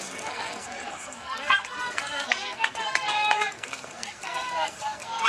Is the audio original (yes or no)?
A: no